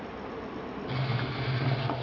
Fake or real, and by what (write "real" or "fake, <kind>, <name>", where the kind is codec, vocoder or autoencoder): real